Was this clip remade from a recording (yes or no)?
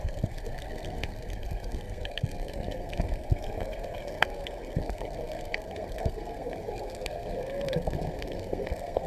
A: yes